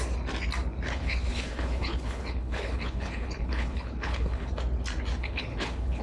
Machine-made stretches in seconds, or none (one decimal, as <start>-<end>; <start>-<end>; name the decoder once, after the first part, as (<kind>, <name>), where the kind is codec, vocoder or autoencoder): 0.9-4.5 (codec, HILCodec); 5.2-6.0